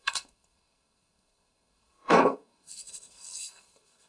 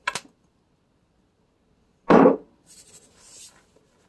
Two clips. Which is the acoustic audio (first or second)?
second